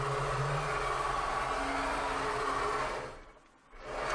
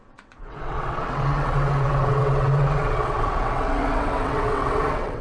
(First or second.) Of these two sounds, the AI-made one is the second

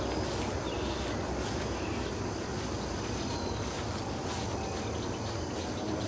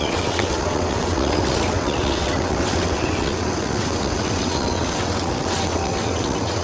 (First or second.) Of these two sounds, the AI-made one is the second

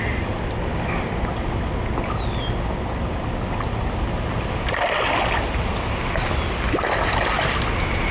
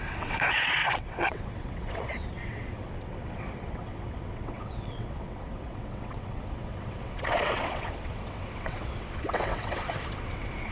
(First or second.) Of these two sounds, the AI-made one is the second